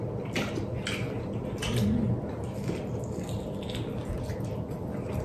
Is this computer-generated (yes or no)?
no